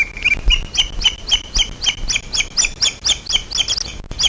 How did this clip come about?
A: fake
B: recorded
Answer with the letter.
B